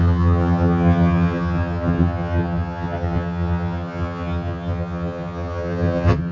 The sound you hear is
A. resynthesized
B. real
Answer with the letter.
A